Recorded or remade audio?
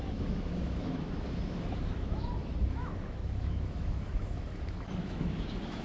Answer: remade